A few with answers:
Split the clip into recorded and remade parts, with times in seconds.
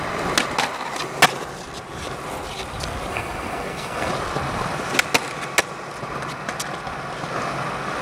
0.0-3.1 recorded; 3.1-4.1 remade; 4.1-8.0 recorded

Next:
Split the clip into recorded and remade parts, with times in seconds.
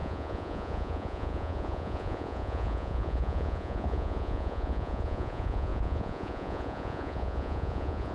0.0-8.1 remade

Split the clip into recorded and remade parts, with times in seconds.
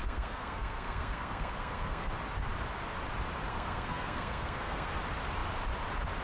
0.0-2.1 remade; 2.1-3.5 recorded; 3.5-5.0 remade; 5.0-6.2 recorded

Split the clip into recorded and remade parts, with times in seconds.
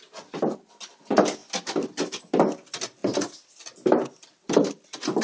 0.0-5.2 recorded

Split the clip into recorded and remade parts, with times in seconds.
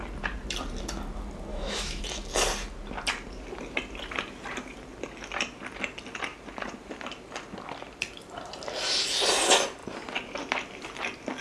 0.0-1.5 recorded; 1.5-2.0 remade; 2.0-11.4 recorded